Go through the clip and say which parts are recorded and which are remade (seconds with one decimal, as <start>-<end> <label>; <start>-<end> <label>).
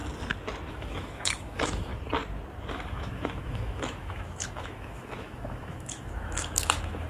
0.0-0.7 recorded; 0.7-1.9 remade; 1.9-2.7 recorded; 2.7-7.1 remade